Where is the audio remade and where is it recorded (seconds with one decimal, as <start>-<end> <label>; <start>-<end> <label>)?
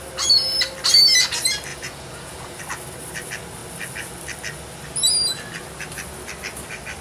0.0-1.7 recorded; 1.7-2.6 remade; 2.6-7.0 recorded